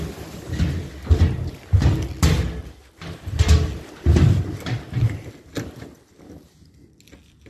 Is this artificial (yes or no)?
no